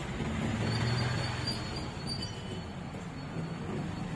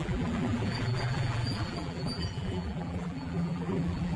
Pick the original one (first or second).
first